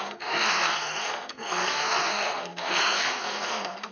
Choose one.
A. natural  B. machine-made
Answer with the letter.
B